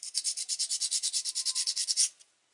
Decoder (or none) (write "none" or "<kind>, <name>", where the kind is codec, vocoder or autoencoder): none